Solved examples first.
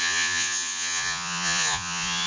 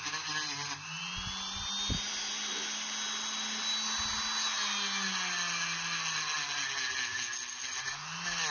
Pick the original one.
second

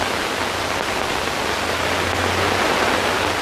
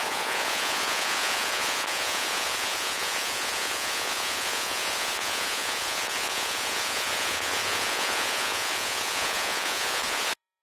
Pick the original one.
first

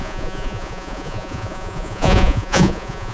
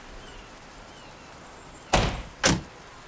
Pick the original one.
second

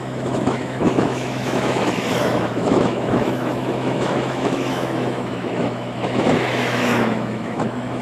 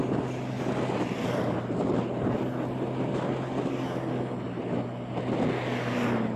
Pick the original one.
second